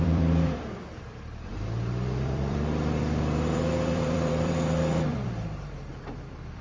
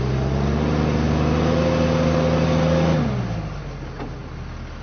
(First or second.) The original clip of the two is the second